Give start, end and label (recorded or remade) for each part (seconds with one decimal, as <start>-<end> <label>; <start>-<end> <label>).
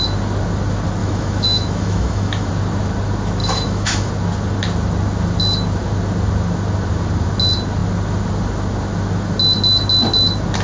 0.0-1.0 recorded; 1.0-2.5 remade; 2.5-3.4 recorded; 3.4-4.1 remade; 4.1-10.6 recorded